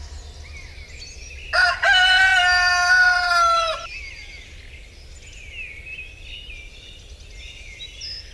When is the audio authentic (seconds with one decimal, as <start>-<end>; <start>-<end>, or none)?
0.0-8.3